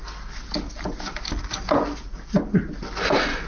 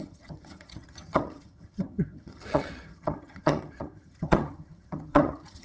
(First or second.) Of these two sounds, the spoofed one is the second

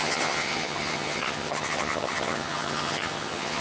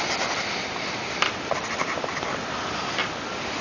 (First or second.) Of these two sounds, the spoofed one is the first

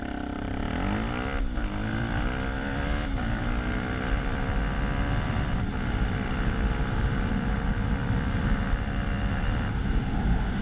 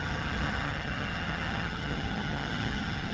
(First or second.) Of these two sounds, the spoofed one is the second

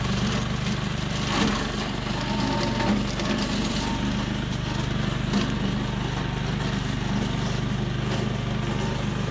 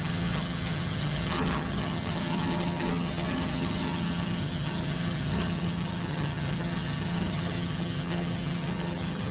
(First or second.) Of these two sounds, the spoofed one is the second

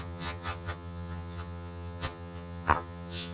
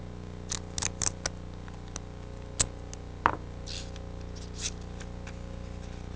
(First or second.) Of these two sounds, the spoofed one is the first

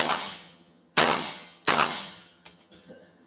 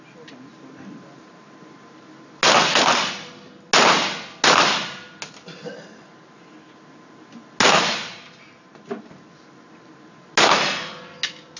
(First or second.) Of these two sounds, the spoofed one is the first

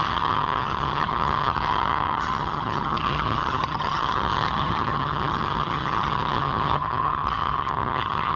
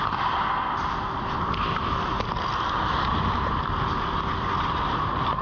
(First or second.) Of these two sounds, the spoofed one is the first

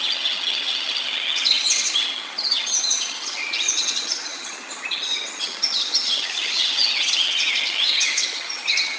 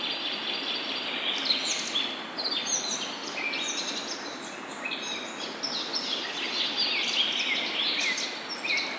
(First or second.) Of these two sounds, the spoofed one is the first